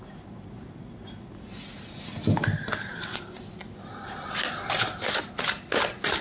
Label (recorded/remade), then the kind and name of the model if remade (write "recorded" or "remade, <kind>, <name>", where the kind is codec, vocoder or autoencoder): recorded